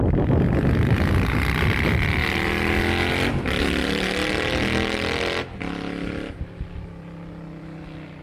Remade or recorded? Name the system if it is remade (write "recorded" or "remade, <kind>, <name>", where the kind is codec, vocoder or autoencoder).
recorded